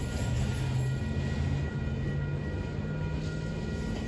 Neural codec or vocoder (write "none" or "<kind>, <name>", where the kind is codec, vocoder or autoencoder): none